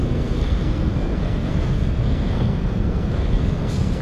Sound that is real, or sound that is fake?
fake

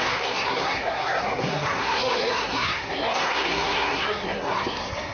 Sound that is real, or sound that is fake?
fake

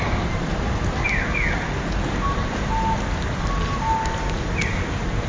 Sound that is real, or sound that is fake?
real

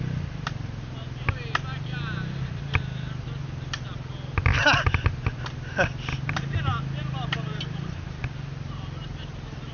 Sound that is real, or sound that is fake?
real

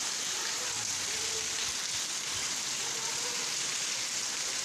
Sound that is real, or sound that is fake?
real